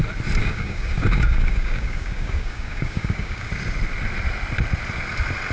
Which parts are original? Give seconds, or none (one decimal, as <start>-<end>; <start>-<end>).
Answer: 0.0-0.4; 3.5-5.5